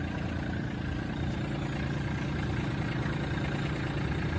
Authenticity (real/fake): real